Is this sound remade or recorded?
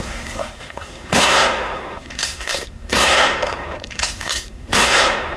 remade